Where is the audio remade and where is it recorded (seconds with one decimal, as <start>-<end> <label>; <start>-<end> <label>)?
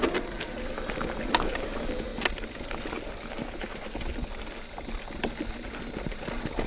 0.0-6.7 recorded